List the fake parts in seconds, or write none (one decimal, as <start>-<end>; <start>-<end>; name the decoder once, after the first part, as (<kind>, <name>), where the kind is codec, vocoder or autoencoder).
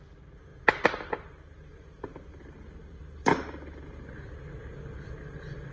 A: none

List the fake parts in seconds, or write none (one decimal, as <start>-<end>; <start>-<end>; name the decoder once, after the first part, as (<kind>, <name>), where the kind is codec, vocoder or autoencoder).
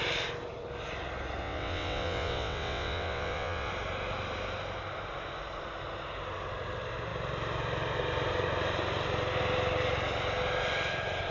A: 1.4-3.7 (vocoder, WaveNeXt)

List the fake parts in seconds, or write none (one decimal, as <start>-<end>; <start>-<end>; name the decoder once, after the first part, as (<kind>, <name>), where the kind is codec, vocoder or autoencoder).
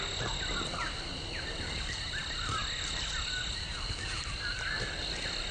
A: none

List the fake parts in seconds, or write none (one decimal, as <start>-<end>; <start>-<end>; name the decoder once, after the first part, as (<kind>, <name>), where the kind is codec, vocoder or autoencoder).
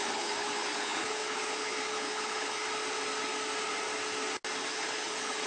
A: 0.0-2.6 (codec, HILCodec); 4.7-5.5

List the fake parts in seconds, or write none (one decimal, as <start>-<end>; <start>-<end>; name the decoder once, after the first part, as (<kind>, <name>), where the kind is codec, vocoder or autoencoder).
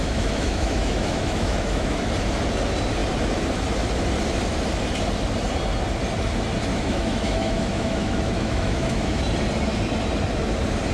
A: 0.0-2.1 (autoencoder, DAC-VAE); 6.7-9.2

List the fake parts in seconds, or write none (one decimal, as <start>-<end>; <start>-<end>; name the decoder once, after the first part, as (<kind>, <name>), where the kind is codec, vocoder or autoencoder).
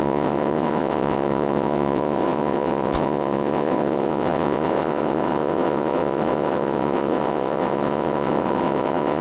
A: 0.0-9.2 (vocoder, WaveNeXt)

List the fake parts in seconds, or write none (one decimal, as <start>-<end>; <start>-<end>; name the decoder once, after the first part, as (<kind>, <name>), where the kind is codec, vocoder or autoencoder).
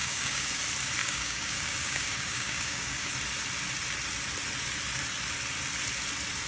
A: 0.0-0.6 (codec, DAC); 1.0-3.1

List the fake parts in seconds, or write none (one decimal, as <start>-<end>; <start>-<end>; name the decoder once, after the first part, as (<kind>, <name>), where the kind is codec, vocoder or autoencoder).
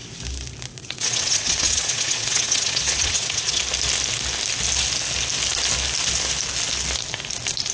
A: 0.7-3.6 (vocoder, WaveNeXt)